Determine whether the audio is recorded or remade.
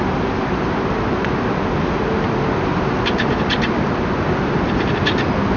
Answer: recorded